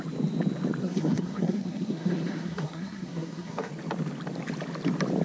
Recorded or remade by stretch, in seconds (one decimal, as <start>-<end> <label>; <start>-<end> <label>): 0.0-0.8 recorded; 0.8-3.7 remade; 3.7-5.2 recorded